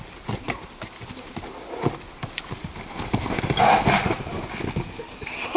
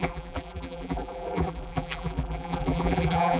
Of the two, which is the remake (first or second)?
second